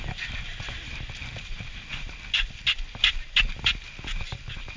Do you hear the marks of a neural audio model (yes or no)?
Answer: no